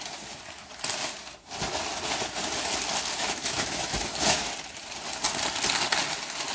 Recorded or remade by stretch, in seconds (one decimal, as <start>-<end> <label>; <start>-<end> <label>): 0.0-3.2 recorded; 3.2-4.5 remade; 4.5-6.5 recorded